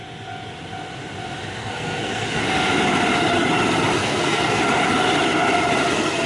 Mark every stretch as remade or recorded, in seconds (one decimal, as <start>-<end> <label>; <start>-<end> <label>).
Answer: 0.0-1.6 recorded; 1.6-2.4 remade; 2.4-4.0 recorded; 4.0-4.6 remade; 4.6-6.3 recorded